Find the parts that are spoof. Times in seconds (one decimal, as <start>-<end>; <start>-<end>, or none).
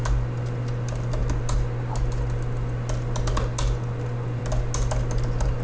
none